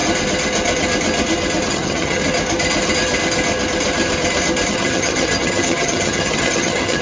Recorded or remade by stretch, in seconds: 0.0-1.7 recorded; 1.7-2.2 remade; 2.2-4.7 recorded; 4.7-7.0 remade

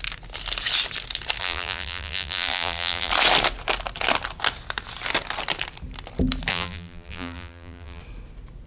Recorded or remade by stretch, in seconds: 0.0-1.4 recorded; 1.4-3.1 remade; 3.1-6.5 recorded; 6.5-8.0 remade; 8.0-8.7 recorded

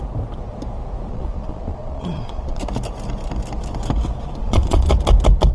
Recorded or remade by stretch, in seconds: 0.0-1.1 recorded; 1.1-2.6 remade; 2.6-4.4 recorded; 4.4-4.9 remade; 4.9-5.5 recorded

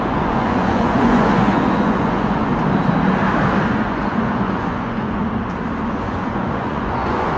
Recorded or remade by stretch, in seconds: 0.0-2.5 remade; 2.5-3.7 recorded; 3.7-5.2 remade; 5.2-5.8 recorded; 5.8-7.4 remade

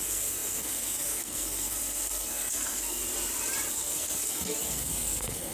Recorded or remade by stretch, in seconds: 0.0-3.0 remade; 3.0-3.7 recorded; 3.7-5.5 remade